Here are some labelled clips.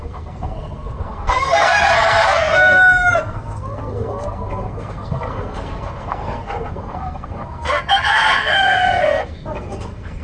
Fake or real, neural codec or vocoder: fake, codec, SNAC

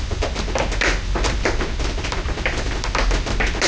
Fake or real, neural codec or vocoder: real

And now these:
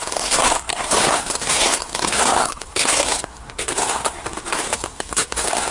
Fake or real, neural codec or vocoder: fake, codec, SNAC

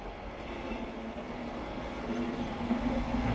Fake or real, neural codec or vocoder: fake, codec, SNAC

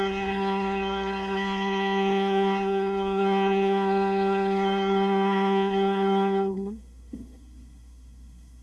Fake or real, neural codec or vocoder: fake, codec, SNAC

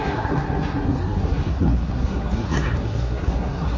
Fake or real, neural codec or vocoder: fake, codec, SNAC